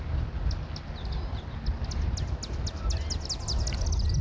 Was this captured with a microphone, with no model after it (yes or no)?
yes